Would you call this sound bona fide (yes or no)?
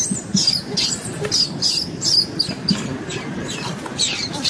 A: yes